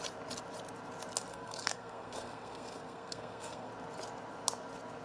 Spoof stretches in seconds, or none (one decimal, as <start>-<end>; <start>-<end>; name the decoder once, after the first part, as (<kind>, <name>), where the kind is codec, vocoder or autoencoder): 1.3-3.7 (codec, SNAC)